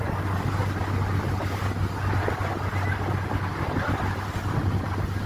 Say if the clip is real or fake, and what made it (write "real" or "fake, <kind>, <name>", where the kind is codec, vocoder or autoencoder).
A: real